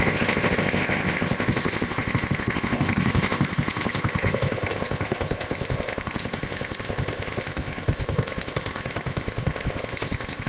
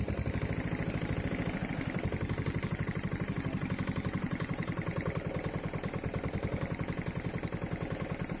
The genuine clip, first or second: second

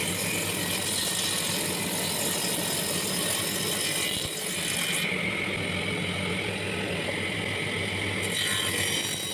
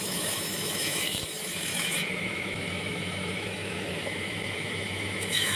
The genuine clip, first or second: first